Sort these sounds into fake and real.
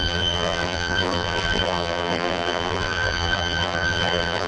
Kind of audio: fake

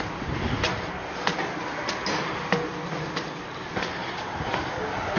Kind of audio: real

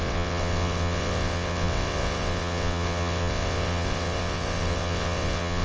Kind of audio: fake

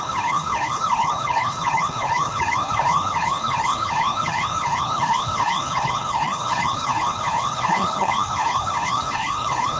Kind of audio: fake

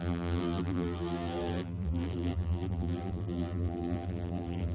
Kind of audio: fake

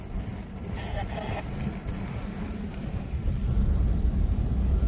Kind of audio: real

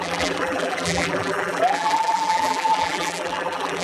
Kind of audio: fake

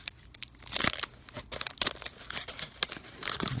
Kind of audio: real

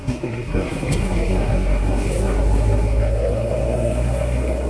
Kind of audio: fake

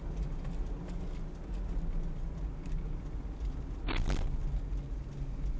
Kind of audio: real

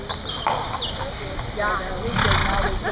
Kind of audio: real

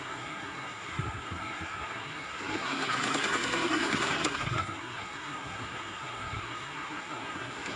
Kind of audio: fake